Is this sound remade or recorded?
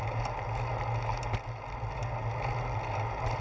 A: recorded